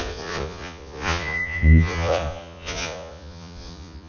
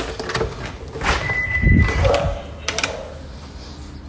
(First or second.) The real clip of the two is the second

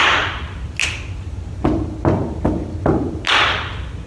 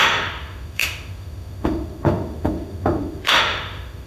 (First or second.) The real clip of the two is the first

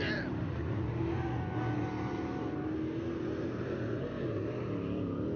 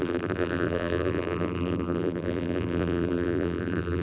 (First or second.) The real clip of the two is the first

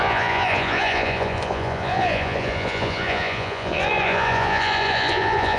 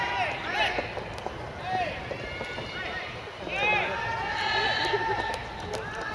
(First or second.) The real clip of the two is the second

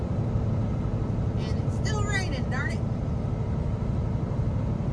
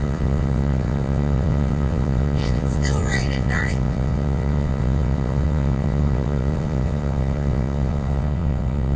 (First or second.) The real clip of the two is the first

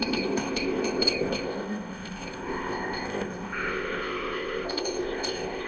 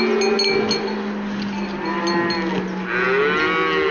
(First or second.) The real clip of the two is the second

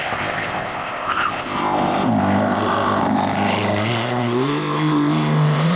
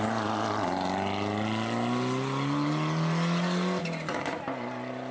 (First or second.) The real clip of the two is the second